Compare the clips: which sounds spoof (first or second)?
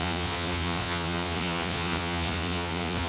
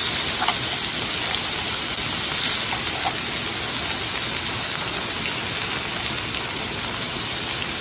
first